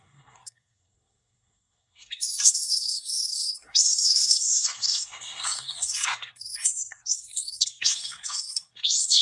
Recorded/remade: remade